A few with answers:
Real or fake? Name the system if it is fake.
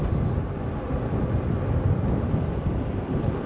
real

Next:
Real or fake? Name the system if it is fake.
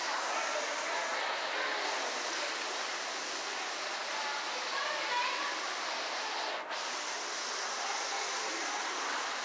real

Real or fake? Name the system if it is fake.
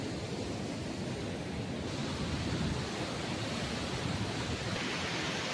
real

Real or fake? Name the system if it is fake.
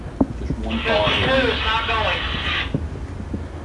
real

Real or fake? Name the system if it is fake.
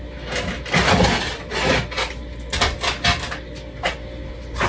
real